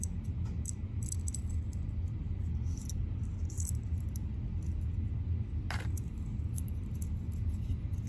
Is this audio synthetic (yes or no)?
no